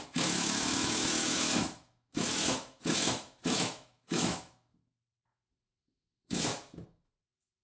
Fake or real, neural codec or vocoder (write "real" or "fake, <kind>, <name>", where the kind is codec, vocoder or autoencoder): fake, autoencoder, DAC-VAE